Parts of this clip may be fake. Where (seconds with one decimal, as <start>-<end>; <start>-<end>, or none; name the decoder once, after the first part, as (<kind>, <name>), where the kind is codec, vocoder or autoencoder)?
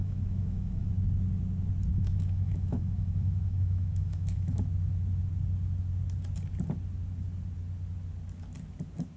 0.0-0.9 (autoencoder, DAC-VAE); 1.9-4.6